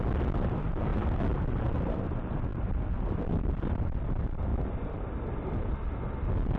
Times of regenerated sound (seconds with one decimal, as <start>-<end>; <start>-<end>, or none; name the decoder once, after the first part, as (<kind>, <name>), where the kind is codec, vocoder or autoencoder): 0.0-4.5 (vocoder, BigVGAN v2)